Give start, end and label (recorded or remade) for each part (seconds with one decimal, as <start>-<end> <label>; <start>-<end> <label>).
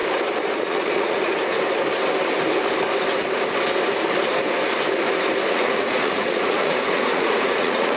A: 0.0-0.6 recorded; 0.6-1.3 remade; 1.3-5.5 recorded; 5.5-8.0 remade